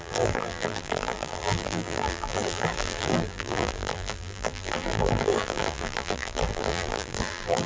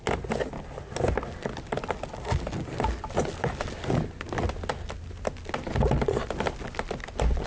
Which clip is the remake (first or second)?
first